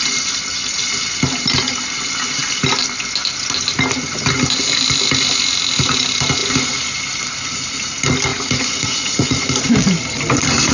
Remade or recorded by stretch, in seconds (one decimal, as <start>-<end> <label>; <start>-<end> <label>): 0.0-8.3 recorded; 8.3-9.4 remade; 9.4-10.7 recorded